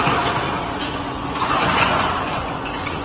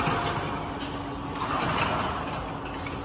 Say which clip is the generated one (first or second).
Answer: first